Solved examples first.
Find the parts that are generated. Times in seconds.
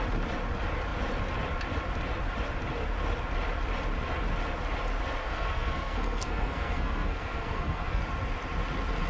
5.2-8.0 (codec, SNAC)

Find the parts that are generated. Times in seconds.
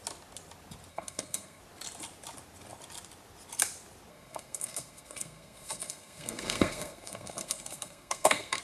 0.9-1.6 (codec, SNAC); 4.1-8.6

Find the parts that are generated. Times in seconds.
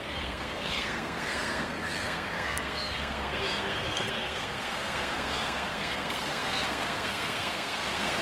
0.0-8.2 (codec, SNAC)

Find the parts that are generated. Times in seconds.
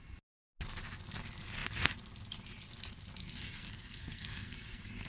3.2-5.1 (codec, SNAC)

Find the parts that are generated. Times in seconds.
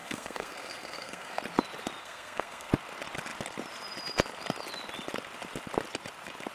0.0-1.4 (codec, SNAC); 2.0-2.7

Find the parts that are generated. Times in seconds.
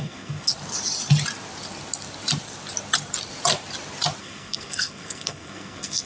0.0-0.5 (codec, SNAC); 4.2-6.1